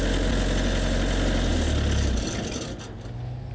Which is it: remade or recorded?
recorded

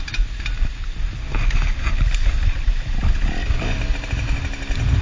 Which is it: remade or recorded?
recorded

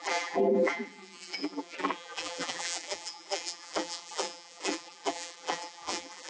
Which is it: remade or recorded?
remade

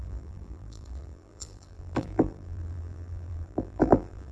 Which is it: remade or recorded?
remade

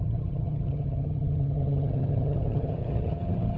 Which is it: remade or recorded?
remade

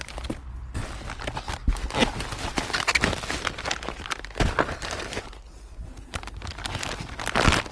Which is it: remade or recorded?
recorded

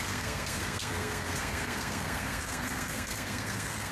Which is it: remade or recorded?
remade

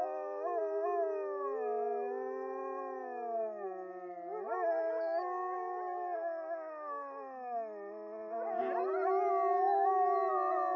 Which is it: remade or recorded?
recorded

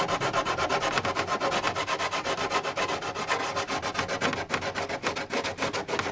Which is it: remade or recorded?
recorded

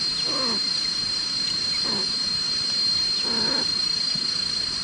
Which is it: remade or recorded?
recorded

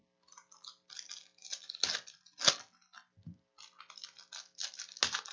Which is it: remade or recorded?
recorded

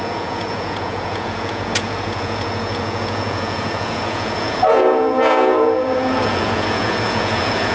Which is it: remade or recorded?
remade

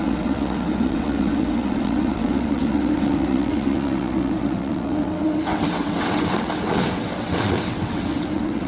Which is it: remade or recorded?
remade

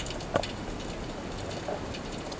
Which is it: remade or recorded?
recorded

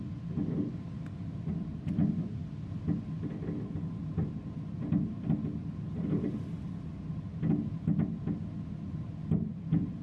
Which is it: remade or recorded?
recorded